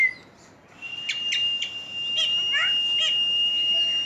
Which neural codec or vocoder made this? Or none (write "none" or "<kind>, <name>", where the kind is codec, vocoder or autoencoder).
none